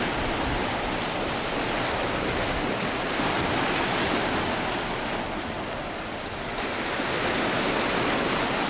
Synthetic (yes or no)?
no